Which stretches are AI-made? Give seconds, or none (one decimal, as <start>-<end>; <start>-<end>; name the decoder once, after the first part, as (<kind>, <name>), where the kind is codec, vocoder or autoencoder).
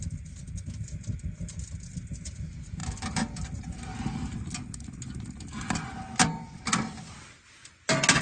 none